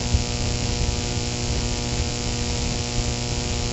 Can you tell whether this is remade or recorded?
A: recorded